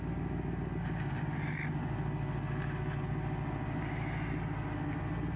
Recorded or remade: recorded